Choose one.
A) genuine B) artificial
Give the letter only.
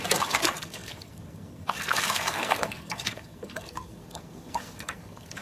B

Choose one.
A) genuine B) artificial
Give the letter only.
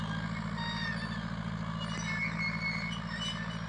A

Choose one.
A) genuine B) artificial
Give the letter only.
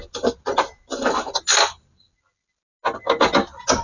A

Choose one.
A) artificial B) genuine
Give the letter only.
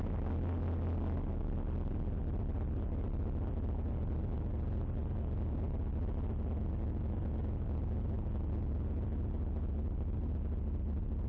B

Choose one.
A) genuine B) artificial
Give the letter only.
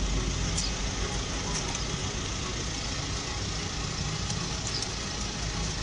A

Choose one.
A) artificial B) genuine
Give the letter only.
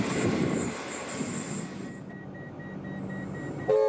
B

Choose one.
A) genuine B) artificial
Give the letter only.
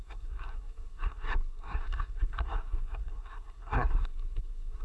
B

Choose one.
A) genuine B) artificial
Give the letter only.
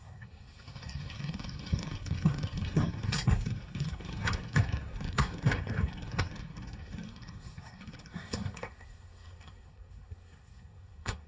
B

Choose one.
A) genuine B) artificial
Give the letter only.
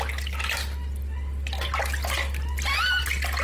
A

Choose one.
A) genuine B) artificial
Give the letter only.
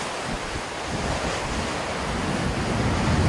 A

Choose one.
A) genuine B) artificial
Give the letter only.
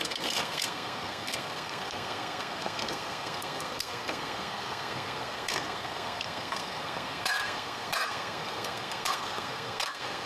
B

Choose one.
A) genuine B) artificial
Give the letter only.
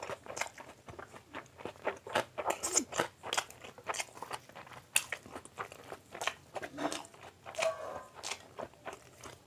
A